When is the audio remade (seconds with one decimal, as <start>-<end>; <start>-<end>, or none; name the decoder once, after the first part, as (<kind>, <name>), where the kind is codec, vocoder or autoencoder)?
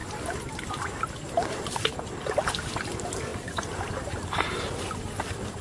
3.3-5.6 (vocoder, BigVGAN v2)